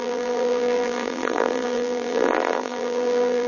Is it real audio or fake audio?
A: fake